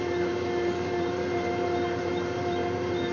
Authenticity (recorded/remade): remade